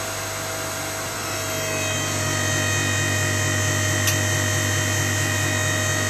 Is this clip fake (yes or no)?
no